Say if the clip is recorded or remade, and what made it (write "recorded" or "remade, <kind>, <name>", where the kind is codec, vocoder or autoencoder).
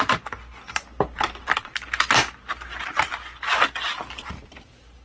recorded